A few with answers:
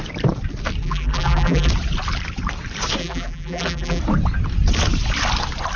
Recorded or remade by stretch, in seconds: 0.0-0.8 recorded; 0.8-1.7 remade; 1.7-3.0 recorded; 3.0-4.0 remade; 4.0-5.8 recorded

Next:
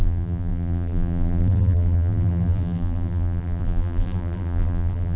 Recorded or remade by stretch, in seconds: 0.0-5.2 remade

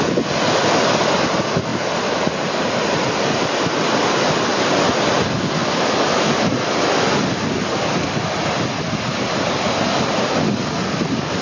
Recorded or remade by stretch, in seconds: 0.0-5.6 recorded; 5.6-6.8 remade; 6.8-11.4 recorded